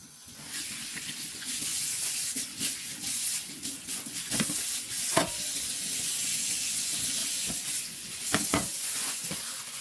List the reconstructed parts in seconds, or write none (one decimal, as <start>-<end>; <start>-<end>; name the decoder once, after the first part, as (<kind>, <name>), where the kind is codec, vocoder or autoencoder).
0.0-9.8 (vocoder, Vocos)

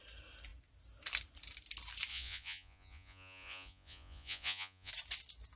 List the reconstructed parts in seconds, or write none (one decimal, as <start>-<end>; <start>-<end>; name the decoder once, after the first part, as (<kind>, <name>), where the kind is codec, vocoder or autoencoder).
2.1-4.9 (vocoder, Vocos)

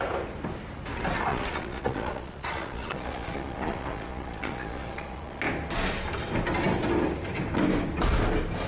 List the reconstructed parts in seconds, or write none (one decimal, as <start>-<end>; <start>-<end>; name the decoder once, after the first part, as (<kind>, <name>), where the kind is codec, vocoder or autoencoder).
1.3-5.4 (vocoder, Vocos)

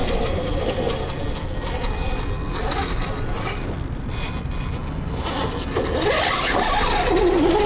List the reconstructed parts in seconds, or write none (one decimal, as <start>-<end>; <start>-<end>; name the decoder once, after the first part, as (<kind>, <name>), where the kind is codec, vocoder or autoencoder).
none

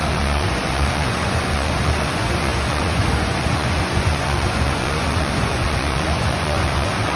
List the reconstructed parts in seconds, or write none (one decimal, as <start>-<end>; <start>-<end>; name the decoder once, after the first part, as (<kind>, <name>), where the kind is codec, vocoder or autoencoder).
0.0-7.2 (vocoder, Vocos)

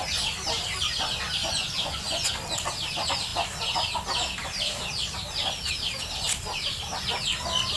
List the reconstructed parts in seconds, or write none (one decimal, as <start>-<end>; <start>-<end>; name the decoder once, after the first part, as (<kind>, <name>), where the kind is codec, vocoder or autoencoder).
1.4-2.3 (vocoder, Vocos)

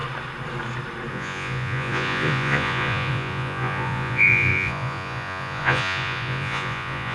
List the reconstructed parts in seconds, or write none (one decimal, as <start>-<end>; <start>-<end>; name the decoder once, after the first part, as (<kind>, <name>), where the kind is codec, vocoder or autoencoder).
1.1-7.1 (vocoder, Vocos)

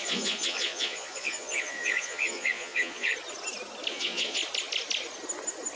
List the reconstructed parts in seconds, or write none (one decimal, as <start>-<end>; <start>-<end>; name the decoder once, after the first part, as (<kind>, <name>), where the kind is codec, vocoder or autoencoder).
0.0-3.1 (vocoder, Vocos); 3.9-4.4